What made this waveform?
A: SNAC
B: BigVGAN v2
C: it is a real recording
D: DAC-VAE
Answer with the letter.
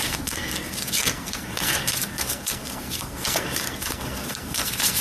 A